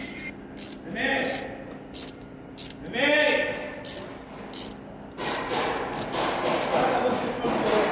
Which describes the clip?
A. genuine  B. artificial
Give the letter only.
A